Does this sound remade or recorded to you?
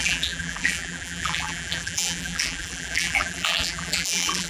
remade